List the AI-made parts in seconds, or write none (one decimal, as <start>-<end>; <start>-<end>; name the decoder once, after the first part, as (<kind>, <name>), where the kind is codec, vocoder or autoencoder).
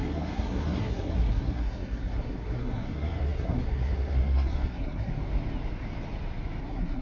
0.0-5.1 (codec, SNAC); 6.6-7.0